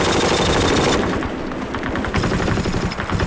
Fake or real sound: real